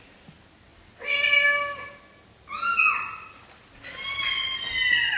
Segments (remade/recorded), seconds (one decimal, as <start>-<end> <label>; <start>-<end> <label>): 0.0-5.2 recorded

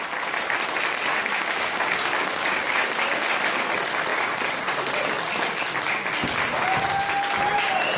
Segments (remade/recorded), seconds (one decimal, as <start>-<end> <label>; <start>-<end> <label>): 0.0-1.2 recorded; 1.2-3.0 remade; 3.0-8.0 recorded

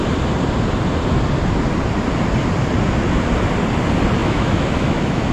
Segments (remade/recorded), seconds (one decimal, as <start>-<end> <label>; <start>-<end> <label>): 0.0-4.2 recorded; 4.2-5.3 remade

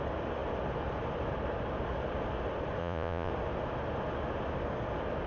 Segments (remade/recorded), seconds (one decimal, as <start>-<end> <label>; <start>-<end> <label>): 0.0-2.8 recorded; 2.8-3.3 remade; 3.3-5.3 recorded

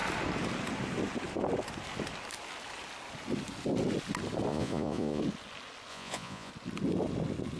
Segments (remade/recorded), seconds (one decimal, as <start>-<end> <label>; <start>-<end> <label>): 0.0-4.5 recorded; 4.5-5.2 remade; 5.2-5.9 recorded; 5.9-6.5 remade; 6.5-7.6 recorded